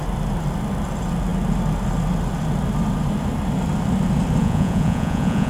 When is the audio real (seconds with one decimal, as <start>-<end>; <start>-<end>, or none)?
0.0-4.4